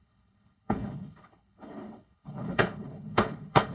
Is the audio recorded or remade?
remade